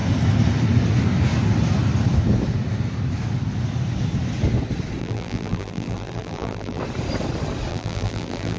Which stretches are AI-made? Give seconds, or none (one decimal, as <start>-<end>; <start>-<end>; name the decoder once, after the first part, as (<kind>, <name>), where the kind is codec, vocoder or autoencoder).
5.0-6.8 (vocoder, BigVGAN v2); 7.7-8.6